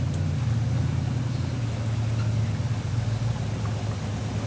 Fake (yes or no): no